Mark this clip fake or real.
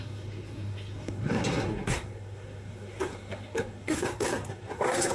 fake